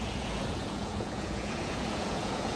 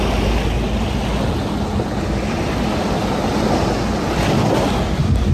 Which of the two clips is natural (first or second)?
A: second